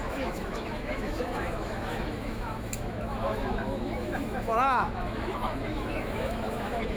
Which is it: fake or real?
fake